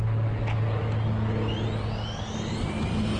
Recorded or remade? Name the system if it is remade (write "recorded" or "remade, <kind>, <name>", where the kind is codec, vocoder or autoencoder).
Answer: recorded